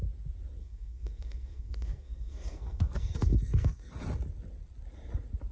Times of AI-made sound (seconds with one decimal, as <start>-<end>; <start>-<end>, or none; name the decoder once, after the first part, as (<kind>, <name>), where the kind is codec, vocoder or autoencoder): 0.6-3.9 (codec, SNAC)

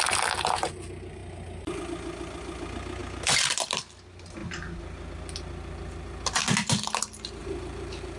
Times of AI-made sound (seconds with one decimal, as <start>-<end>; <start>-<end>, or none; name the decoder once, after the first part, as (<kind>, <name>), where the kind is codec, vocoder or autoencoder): 7.4-8.2 (vocoder, BigVGAN v2)

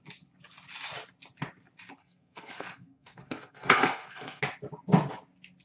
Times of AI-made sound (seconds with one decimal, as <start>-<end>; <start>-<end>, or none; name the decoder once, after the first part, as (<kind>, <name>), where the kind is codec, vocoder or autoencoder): 2.0-4.4 (codec, SNAC)